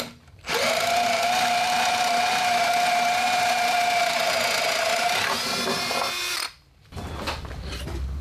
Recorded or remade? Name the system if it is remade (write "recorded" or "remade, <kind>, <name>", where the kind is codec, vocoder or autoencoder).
recorded